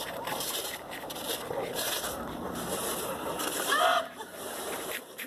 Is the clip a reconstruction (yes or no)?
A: yes